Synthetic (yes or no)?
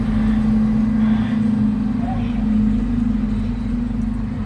no